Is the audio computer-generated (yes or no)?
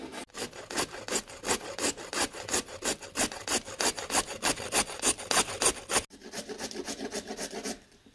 no